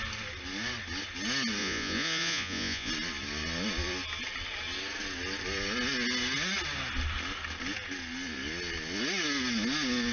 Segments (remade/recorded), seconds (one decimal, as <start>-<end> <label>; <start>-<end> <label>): 0.0-1.6 recorded; 1.6-2.9 remade; 2.9-10.1 recorded

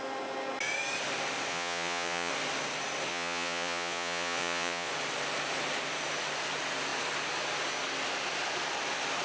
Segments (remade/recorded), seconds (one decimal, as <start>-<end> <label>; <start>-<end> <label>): 0.0-1.5 recorded; 1.5-2.3 remade; 2.3-3.1 recorded; 3.1-4.9 remade; 4.9-9.2 recorded

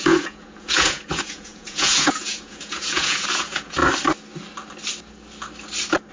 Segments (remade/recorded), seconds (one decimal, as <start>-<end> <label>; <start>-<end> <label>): 0.0-3.8 remade; 3.8-6.1 recorded

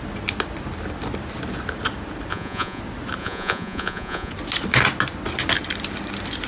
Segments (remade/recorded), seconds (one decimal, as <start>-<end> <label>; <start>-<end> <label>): 0.0-2.3 recorded; 2.3-2.8 remade; 2.8-3.2 recorded; 3.2-4.3 remade; 4.3-6.5 recorded